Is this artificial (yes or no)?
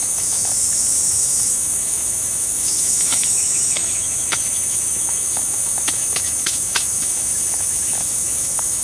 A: yes